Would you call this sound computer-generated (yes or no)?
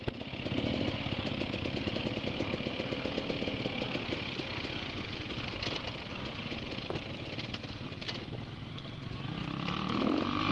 no